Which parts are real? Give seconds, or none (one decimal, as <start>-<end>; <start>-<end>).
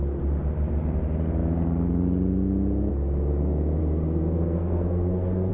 0.0-3.8